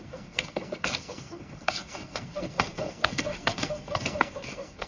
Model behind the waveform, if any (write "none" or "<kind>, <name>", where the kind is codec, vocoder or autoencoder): codec, SNAC